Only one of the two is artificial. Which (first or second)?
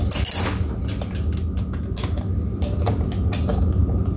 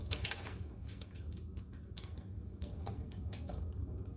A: second